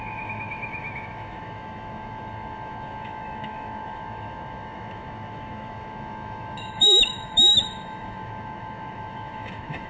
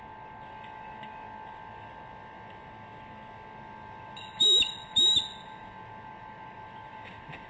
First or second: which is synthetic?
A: first